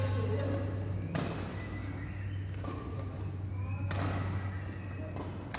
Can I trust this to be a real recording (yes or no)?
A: yes